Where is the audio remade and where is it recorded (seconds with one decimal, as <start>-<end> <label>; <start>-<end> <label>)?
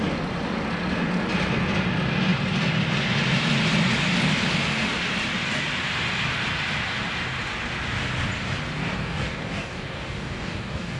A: 0.0-8.8 recorded; 8.8-11.0 remade